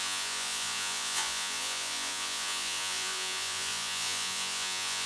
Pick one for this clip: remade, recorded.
remade